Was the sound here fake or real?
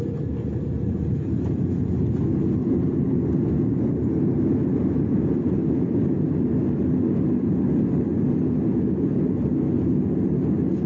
real